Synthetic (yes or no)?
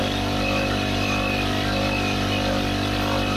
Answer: no